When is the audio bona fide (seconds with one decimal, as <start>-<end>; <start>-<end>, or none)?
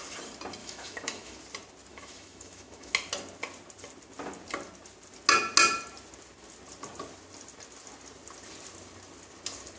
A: 0.0-0.6; 1.4-1.9; 2.9-9.8